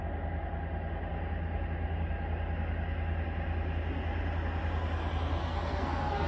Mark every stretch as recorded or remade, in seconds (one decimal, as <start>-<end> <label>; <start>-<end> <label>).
0.0-5.4 recorded; 5.4-6.3 remade